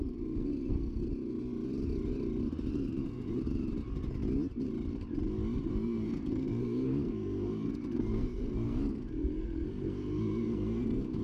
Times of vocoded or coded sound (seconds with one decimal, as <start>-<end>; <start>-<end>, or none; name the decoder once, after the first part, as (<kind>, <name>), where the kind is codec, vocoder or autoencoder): 0.0-1.1 (codec, SNAC); 2.7-3.3; 5.7-11.2